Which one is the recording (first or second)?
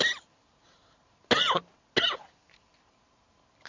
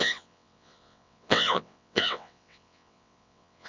first